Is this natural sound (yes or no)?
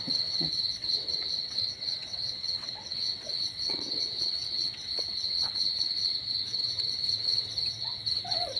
no